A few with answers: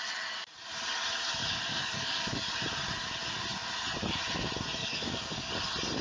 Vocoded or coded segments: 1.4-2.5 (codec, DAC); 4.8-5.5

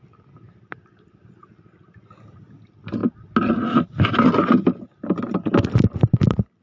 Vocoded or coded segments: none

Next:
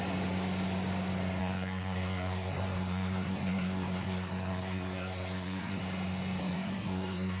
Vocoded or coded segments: 1.4-5.8 (codec, SNAC); 6.4-7.4

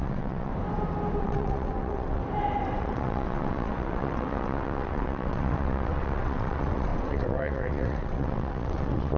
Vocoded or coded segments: 0.0-0.5 (vocoder, WaveNeXt); 1.2-2.2; 2.8-9.2

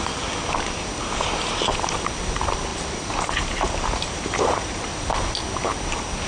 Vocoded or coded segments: 2.7-5.1 (vocoder, BigVGAN v2)

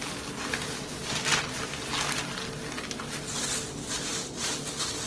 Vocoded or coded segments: none

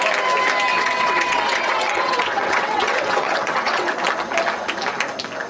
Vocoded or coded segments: 0.7-4.0 (vocoder, WaveNeXt)